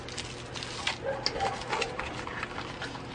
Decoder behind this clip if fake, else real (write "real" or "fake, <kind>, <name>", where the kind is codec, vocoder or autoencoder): real